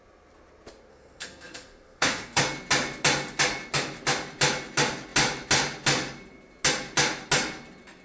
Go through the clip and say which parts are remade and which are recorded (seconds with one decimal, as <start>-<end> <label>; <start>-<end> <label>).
0.0-0.9 recorded; 0.9-2.4 remade; 2.4-8.0 recorded